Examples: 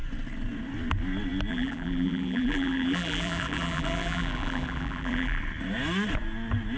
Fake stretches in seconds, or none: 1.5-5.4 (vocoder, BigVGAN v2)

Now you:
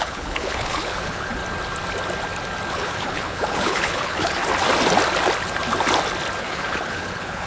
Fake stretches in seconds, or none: 0.0-1.4 (codec, HILCodec); 2.7-4.4; 6.4-7.5

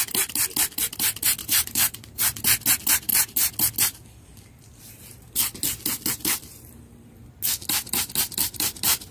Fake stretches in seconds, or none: 1.4-2.2 (vocoder, BigVGAN v2)

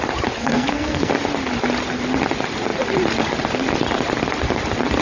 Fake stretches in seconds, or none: 0.4-1.1 (codec, SNAC)

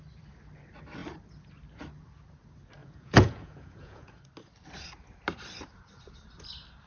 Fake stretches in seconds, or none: 2.8-4.2 (vocoder, Vocos)

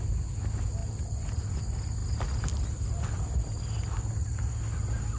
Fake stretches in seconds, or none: 0.8-1.6 (vocoder, BigVGAN v2)

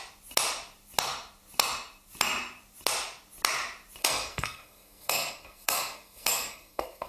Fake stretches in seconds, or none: 4.0-7.1 (codec, SNAC)